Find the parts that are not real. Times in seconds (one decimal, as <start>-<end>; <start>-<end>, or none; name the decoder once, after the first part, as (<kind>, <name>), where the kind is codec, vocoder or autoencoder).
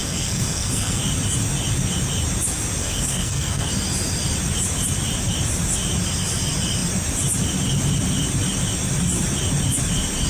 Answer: 0.0-1.0 (codec, SNAC); 2.8-3.7